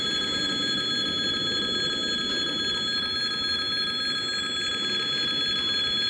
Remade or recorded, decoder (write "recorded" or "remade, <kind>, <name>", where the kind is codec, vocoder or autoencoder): recorded